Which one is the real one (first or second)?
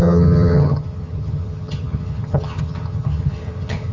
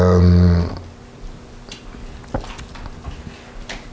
second